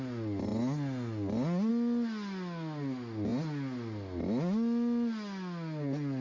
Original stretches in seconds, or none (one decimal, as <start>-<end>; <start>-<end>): 0.0-6.2